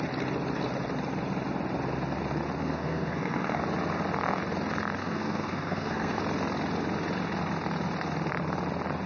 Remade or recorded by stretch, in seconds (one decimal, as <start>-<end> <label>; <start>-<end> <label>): 0.0-2.6 recorded; 2.6-3.6 remade; 3.6-5.0 recorded; 5.0-6.2 remade; 6.2-9.1 recorded